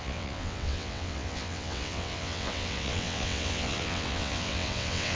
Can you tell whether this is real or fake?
fake